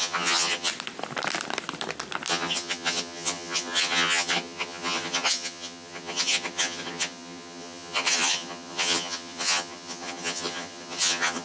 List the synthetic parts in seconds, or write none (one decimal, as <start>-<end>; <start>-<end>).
0.0-0.7; 2.3-11.4